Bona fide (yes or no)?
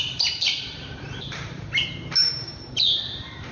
no